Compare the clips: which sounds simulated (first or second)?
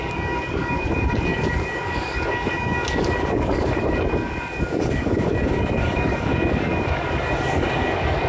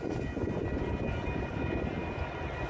first